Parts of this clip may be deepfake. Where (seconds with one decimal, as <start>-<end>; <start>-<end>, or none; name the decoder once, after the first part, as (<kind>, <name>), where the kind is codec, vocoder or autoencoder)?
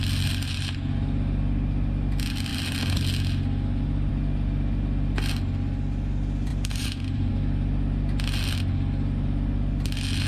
6.5-7.3 (vocoder, BigVGAN v2)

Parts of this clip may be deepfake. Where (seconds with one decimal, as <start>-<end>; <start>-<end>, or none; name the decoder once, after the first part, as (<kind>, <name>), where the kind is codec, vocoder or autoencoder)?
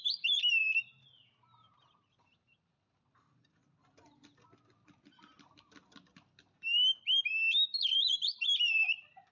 0.0-0.6 (vocoder, BigVGAN v2); 2.2-3.6; 7.7-9.3